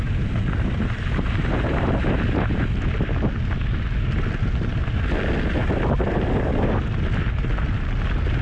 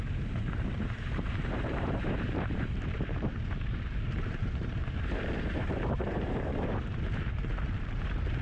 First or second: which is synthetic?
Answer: second